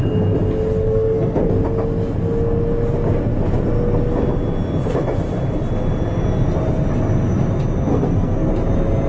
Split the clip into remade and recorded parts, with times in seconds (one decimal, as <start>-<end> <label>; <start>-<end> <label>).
0.0-0.8 recorded; 0.8-1.5 remade; 1.5-7.9 recorded; 7.9-8.5 remade; 8.5-9.1 recorded